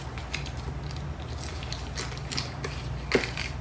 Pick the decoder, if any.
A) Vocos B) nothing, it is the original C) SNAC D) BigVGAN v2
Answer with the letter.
B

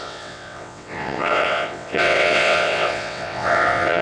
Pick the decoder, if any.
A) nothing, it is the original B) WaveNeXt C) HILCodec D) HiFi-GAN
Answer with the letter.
B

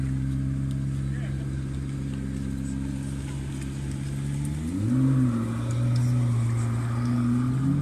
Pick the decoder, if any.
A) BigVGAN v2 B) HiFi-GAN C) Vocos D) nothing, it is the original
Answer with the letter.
D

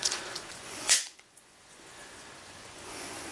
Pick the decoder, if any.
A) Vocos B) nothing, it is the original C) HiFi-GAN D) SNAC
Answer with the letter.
A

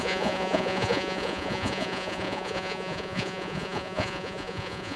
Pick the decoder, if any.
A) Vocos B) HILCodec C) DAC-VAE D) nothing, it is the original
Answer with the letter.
A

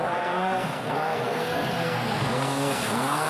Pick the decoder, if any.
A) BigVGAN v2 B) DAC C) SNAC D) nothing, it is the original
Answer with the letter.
C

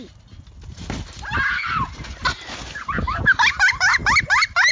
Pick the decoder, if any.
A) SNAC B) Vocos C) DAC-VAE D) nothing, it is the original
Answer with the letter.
D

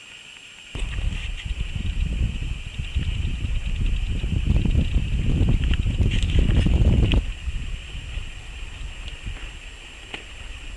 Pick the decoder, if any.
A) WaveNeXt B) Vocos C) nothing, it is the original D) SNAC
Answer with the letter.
C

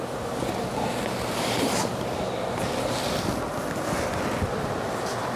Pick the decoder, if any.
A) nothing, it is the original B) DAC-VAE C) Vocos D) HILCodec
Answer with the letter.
A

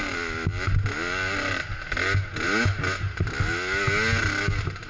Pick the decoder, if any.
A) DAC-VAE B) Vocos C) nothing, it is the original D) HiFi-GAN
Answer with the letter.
C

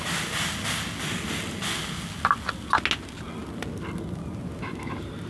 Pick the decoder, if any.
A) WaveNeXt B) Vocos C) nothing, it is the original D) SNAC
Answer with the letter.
C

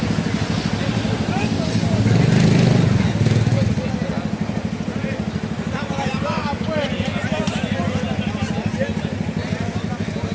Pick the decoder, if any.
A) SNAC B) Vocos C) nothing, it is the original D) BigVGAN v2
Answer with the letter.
C